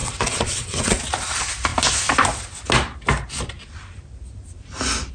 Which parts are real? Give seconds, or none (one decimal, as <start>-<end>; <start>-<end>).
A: 1.0-5.1